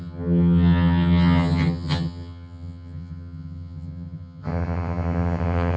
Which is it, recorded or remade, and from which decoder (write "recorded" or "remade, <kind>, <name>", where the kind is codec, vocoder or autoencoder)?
remade, vocoder, HiFi-GAN